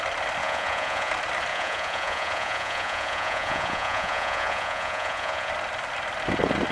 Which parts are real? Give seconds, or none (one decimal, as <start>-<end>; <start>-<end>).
0.0-0.4; 1.1-1.5; 5.5-6.7